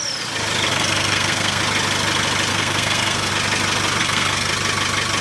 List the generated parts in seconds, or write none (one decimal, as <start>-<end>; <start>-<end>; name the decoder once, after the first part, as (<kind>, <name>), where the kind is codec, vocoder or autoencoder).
0.7-1.6 (codec, SNAC); 2.5-3.3; 4.0-4.5